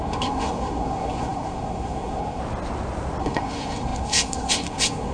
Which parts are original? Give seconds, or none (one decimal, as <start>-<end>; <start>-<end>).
2.4-3.2